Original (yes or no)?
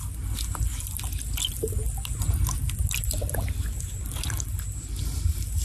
yes